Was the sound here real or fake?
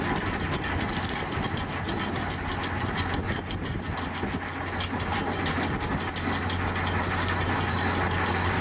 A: real